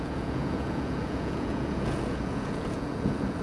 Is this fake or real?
fake